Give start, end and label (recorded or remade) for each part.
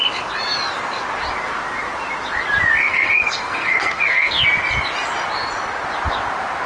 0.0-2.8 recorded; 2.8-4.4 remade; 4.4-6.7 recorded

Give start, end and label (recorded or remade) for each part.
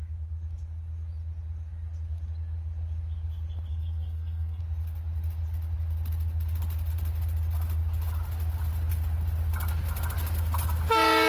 0.0-3.7 recorded; 3.7-4.6 remade; 4.6-11.3 recorded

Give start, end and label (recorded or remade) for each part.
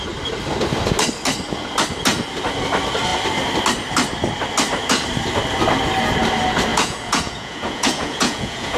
0.0-6.7 recorded; 6.7-8.8 remade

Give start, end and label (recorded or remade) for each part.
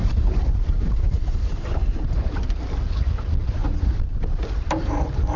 0.0-2.3 remade; 2.3-3.6 recorded; 3.6-5.0 remade; 5.0-5.4 recorded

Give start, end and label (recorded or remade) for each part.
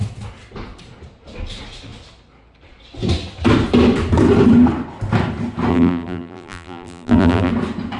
0.0-5.7 recorded; 5.7-7.5 remade; 7.5-8.0 recorded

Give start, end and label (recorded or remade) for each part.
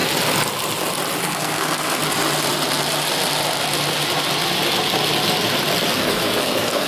0.0-1.2 recorded; 1.2-2.0 remade; 2.0-6.0 recorded; 6.0-6.9 remade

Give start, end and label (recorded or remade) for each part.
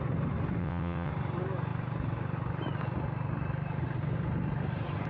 0.0-0.6 recorded; 0.6-1.1 remade; 1.1-5.1 recorded